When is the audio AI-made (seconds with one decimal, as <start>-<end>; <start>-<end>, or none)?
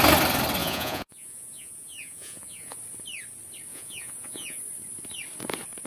0.6-2.8; 3.7-4.6